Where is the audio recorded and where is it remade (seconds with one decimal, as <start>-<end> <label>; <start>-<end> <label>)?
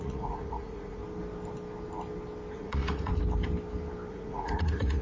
0.0-1.0 remade; 1.0-2.5 recorded; 2.5-3.1 remade; 3.1-4.1 recorded; 4.1-5.0 remade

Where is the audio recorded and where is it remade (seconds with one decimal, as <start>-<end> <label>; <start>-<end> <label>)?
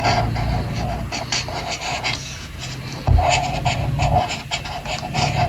0.0-1.9 recorded; 1.9-2.6 remade; 2.6-5.5 recorded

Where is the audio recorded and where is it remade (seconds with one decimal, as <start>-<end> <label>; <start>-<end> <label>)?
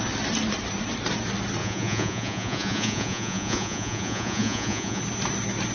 0.0-1.6 recorded; 1.6-5.0 remade; 5.0-5.7 recorded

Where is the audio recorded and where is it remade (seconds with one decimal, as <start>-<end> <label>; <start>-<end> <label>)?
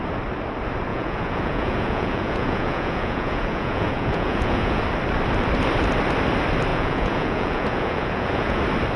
0.0-0.9 recorded; 0.9-4.8 remade; 4.8-6.7 recorded; 6.7-8.6 remade; 8.6-9.0 recorded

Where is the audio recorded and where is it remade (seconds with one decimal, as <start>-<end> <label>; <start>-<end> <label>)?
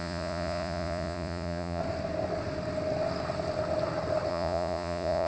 0.0-1.8 remade; 1.8-4.3 recorded; 4.3-5.3 remade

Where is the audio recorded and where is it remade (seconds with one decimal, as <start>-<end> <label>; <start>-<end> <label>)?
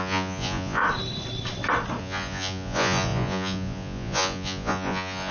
0.0-0.8 remade; 0.8-2.0 recorded; 2.0-5.3 remade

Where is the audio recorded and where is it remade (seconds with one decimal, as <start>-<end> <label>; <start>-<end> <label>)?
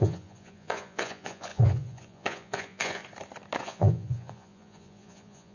0.0-3.0 remade; 3.0-3.6 recorded; 3.6-5.5 remade